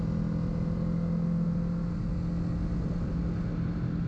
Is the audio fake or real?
real